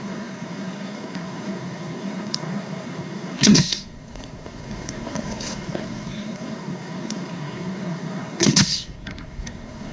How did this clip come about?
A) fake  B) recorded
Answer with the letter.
A